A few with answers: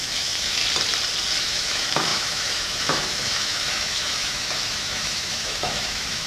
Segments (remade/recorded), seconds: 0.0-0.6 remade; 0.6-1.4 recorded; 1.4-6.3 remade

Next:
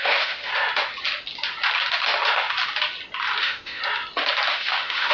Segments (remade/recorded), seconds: 0.0-0.5 remade; 0.5-3.4 recorded; 3.4-3.8 remade; 3.8-4.5 recorded; 4.5-5.1 remade